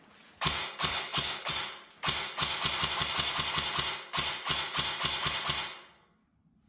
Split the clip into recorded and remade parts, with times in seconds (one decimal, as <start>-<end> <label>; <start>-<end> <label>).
0.0-0.9 recorded; 0.9-1.5 remade; 1.5-6.7 recorded